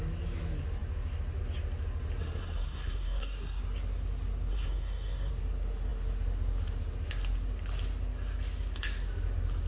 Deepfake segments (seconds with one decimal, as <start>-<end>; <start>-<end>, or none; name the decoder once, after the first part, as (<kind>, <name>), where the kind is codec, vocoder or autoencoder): 2.2-3.6 (codec, SNAC); 4.5-5.3